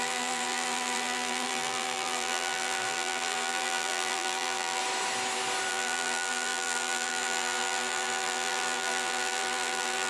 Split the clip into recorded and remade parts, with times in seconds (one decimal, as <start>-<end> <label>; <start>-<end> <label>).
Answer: 0.0-4.8 remade; 4.8-5.7 recorded; 5.7-10.1 remade